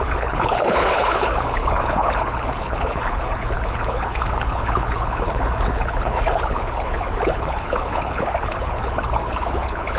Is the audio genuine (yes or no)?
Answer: no